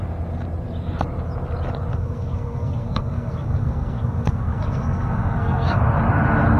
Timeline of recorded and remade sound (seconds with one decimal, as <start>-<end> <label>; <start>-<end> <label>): 0.0-1.9 recorded; 1.9-5.8 remade; 5.8-6.6 recorded